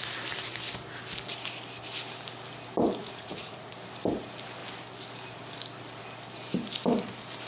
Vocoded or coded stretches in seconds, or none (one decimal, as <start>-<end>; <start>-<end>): 3.0-3.7